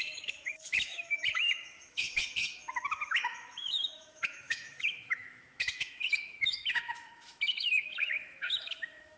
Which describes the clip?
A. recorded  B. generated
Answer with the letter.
B